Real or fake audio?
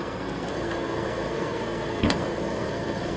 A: fake